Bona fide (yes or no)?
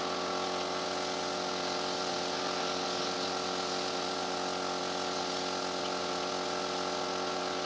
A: yes